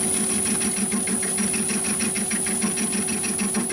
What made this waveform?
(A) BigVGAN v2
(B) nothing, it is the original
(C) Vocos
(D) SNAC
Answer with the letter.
B